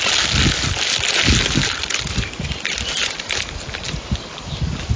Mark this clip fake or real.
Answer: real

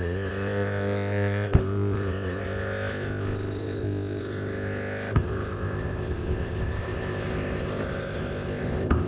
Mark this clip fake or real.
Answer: fake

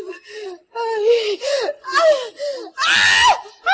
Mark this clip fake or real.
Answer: real